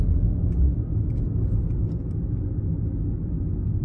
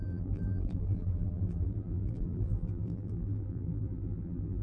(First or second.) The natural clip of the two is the first